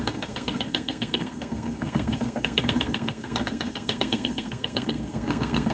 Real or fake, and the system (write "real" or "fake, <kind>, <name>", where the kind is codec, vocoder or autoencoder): fake, codec, SNAC